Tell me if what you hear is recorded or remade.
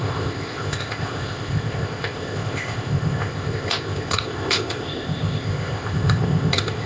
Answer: remade